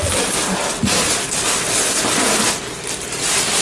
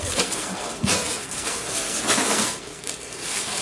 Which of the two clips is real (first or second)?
first